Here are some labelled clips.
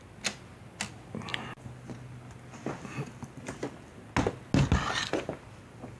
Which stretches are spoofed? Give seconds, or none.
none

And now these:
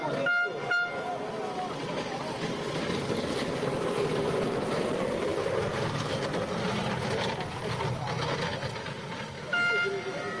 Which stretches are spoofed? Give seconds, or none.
none